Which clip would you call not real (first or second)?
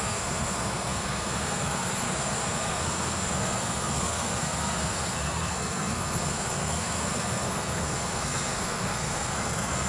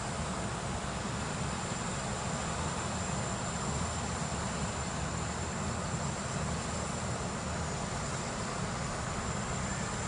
first